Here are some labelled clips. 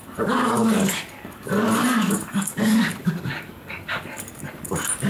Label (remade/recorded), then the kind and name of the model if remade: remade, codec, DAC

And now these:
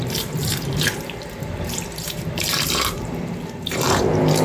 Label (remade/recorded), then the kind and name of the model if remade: remade, vocoder, BigVGAN v2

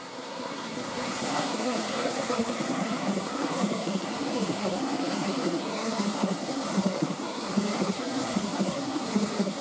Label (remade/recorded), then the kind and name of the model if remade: remade, codec, SNAC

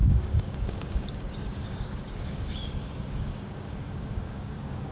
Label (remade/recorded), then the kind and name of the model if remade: remade, codec, DAC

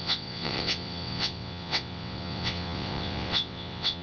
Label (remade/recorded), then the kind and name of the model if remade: remade, vocoder, WaveNeXt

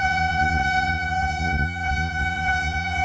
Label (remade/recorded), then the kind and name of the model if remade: remade, vocoder, Vocos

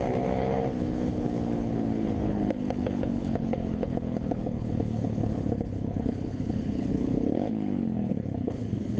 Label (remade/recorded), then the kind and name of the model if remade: remade, codec, HILCodec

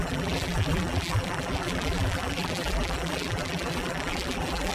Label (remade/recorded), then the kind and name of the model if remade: remade, vocoder, BigVGAN v2